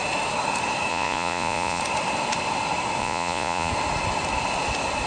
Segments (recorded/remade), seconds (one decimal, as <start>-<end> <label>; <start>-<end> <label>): 0.0-0.9 recorded; 0.9-1.8 remade; 1.8-3.0 recorded; 3.0-3.7 remade; 3.7-5.1 recorded